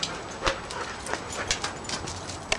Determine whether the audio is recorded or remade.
recorded